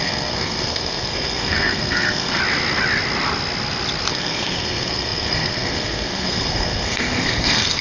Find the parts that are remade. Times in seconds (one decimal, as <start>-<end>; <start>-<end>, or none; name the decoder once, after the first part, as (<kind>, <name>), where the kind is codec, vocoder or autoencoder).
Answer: 0.0-2.4 (codec, SNAC); 4.1-7.8